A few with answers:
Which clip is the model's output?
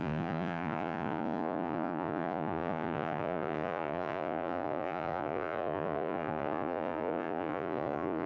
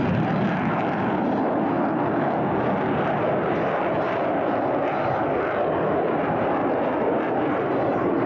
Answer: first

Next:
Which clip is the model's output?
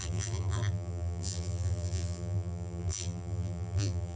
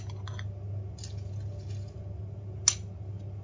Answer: first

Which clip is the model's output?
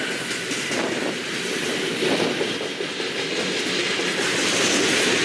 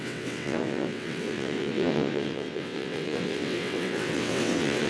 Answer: second